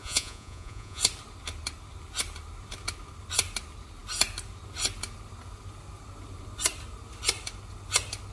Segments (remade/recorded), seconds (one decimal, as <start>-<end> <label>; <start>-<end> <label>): 0.0-1.0 remade; 1.0-8.3 recorded

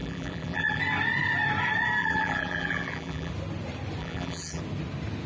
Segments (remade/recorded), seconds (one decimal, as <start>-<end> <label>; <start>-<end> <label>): 0.0-0.8 remade; 0.8-2.0 recorded; 2.0-3.3 remade; 3.3-4.0 recorded; 4.0-4.6 remade; 4.6-5.3 recorded